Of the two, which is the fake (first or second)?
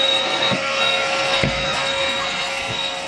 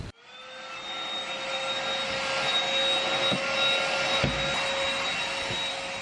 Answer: first